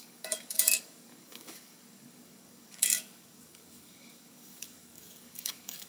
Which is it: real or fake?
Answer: fake